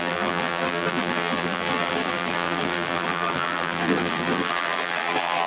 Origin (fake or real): fake